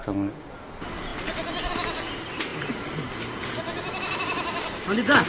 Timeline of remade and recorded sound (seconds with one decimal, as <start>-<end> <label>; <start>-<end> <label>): 0.0-5.3 recorded